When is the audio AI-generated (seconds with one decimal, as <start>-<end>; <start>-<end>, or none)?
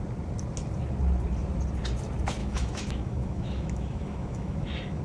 2.4-5.0